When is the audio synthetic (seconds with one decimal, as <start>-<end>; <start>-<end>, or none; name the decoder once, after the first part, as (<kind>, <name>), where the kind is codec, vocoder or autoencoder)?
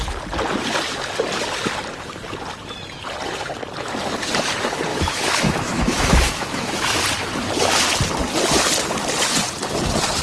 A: 4.9-7.0 (autoencoder, DAC-VAE)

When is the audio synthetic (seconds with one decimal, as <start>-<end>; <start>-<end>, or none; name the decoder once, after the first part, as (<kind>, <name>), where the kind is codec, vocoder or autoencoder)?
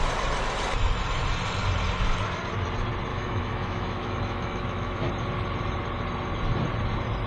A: 3.1-5.1 (autoencoder, DAC-VAE)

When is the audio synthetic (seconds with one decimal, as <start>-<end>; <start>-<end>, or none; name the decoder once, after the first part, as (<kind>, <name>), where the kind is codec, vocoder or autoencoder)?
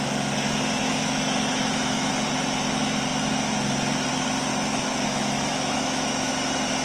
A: 0.8-2.1 (autoencoder, DAC-VAE); 4.5-6.3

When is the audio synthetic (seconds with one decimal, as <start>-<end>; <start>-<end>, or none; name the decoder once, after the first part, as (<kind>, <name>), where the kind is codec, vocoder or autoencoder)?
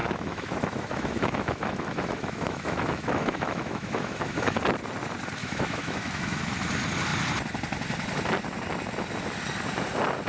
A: 0.0-4.6 (autoencoder, DAC-VAE); 5.4-6.4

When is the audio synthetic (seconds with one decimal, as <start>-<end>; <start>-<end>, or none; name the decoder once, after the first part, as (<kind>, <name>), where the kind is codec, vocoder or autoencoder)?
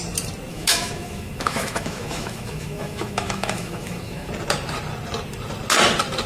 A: 0.5-4.3 (autoencoder, DAC-VAE)